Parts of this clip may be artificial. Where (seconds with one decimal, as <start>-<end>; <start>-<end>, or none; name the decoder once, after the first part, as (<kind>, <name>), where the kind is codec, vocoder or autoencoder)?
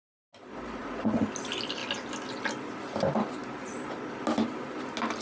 0.8-1.3 (vocoder, Vocos)